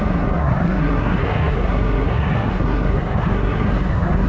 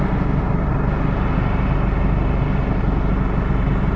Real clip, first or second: second